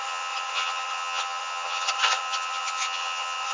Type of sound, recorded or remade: remade